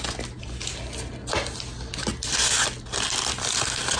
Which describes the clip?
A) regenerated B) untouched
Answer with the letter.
B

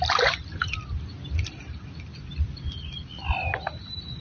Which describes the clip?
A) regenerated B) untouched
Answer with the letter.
B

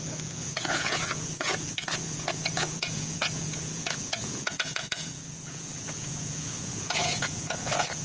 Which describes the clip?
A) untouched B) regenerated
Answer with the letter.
B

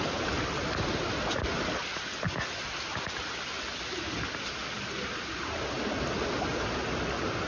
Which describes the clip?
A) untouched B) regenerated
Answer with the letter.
A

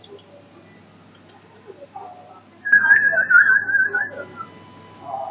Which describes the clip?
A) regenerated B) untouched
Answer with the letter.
B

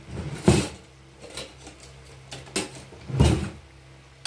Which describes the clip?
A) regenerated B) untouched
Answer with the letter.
B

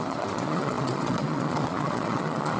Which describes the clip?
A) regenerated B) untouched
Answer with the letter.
A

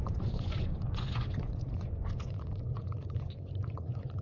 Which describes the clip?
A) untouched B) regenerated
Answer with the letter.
B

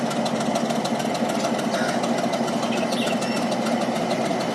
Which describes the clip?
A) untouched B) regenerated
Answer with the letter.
A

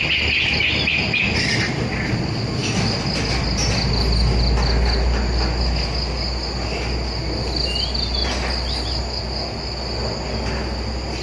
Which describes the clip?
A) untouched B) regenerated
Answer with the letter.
A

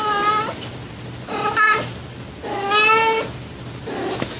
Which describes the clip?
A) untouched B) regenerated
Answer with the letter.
A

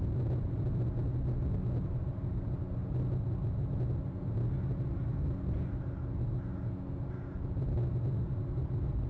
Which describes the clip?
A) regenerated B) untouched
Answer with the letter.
B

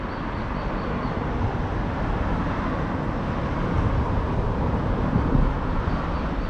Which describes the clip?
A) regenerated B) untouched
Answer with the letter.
B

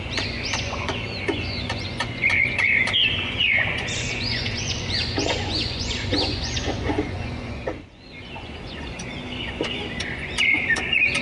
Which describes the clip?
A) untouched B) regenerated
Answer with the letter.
B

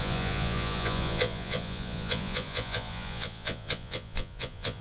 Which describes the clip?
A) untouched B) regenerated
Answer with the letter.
B